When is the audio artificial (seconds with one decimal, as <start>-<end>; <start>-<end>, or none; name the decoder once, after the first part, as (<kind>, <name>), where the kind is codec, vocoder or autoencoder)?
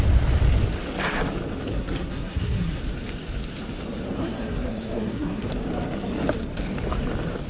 1.7-2.8 (codec, SNAC); 4.2-5.5